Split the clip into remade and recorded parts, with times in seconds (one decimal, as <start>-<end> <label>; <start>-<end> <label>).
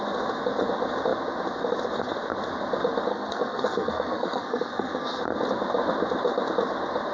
0.0-3.1 recorded; 3.1-5.2 remade; 5.2-7.1 recorded